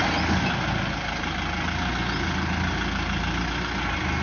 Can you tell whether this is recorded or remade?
recorded